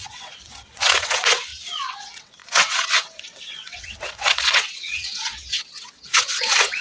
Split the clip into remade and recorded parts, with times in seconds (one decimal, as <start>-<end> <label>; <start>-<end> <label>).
0.0-1.5 remade; 1.5-2.0 recorded; 2.0-6.8 remade

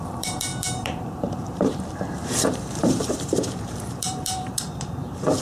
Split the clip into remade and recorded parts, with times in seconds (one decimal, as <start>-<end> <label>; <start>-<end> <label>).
0.0-5.4 remade

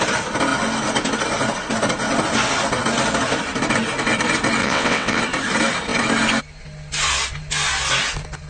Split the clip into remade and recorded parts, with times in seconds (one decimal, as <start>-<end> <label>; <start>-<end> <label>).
0.0-4.6 recorded; 4.6-5.2 remade; 5.2-8.5 recorded

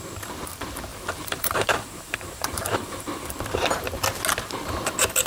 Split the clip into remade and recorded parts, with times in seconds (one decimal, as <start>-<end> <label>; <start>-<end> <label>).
0.0-0.9 recorded; 0.9-3.3 remade; 3.3-5.3 recorded